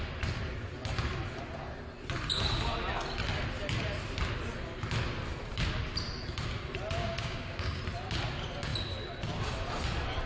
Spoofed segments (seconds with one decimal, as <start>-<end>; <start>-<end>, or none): 7.0-7.8